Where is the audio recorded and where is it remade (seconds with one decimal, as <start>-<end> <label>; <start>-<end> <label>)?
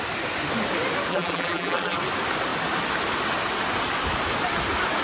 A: 0.0-1.1 recorded; 1.1-2.0 remade; 2.0-5.0 recorded